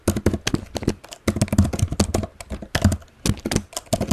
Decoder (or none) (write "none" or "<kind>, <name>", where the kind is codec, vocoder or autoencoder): none